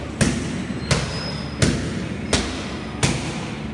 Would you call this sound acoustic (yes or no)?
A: yes